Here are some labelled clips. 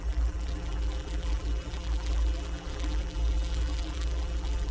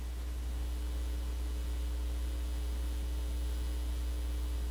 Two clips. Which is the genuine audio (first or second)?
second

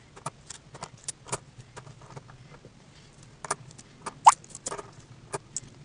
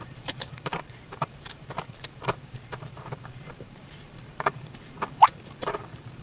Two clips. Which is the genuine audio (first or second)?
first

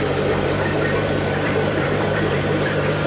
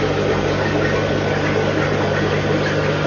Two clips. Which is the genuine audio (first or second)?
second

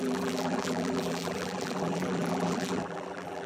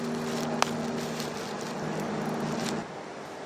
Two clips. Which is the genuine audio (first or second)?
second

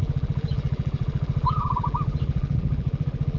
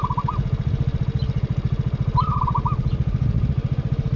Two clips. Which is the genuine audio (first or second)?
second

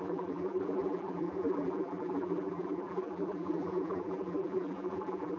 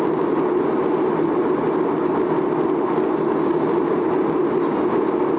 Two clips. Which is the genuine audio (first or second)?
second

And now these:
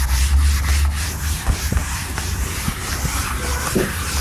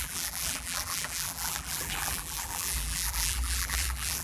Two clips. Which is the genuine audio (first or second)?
first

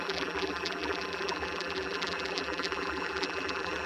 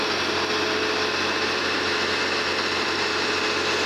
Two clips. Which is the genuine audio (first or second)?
second